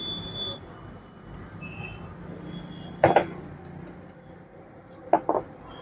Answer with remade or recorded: recorded